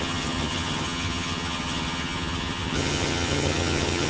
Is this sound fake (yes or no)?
yes